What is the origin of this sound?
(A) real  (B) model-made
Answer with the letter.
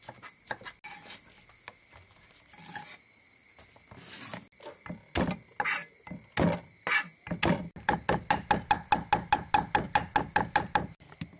A